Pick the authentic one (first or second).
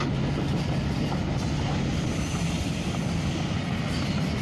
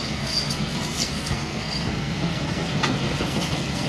first